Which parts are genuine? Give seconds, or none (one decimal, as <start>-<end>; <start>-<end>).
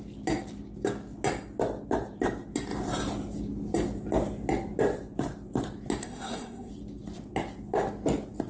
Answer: 0.0-6.0; 6.7-8.5